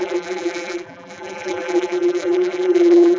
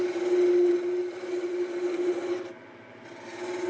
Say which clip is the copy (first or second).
first